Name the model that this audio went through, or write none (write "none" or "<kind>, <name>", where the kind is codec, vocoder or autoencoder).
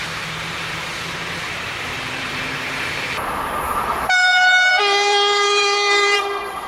vocoder, BigVGAN v2